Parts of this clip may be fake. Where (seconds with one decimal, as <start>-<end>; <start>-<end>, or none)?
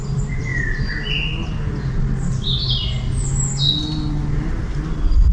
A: none